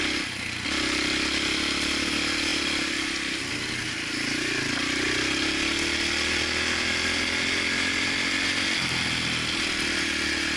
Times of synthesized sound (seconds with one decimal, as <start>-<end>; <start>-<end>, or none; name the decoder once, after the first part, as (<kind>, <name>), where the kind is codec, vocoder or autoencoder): none